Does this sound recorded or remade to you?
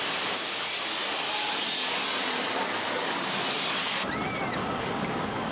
recorded